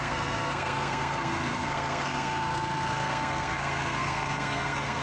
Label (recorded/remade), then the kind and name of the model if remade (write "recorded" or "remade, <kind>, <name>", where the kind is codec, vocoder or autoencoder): remade, codec, SNAC